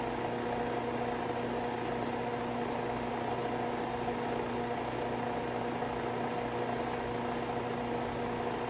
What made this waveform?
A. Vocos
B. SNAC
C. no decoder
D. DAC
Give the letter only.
C